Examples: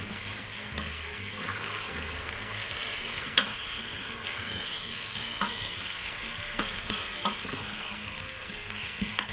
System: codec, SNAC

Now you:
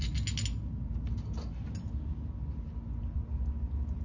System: none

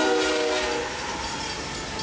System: none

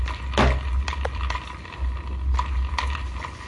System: none